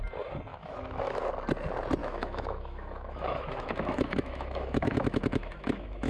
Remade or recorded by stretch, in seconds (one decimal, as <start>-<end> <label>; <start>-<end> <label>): 0.0-0.5 recorded; 0.5-1.2 remade; 1.2-2.0 recorded; 2.0-6.1 remade

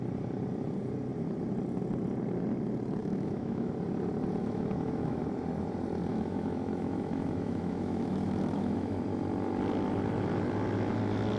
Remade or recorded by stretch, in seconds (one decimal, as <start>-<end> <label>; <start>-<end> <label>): 0.0-3.0 recorded; 3.0-3.7 remade; 3.7-4.4 recorded; 4.4-5.2 remade; 5.2-6.1 recorded; 6.1-9.0 remade; 9.0-11.4 recorded

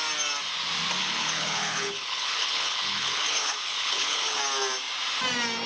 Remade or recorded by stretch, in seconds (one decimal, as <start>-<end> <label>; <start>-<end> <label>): 0.0-1.0 recorded; 1.0-4.4 remade; 4.4-5.7 recorded

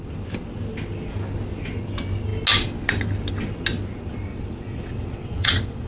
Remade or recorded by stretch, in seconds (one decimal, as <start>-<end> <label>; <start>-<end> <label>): 0.0-4.3 recorded; 4.3-5.9 remade